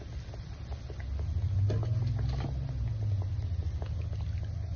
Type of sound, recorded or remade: recorded